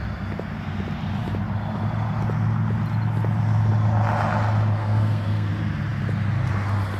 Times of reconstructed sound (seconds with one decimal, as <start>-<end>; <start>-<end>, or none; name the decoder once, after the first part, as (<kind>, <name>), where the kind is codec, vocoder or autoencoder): 4.8-5.5 (codec, SNAC)